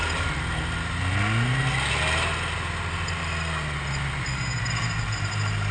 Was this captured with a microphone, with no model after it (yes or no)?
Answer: yes